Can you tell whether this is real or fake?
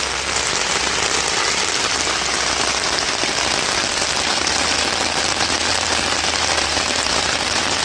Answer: real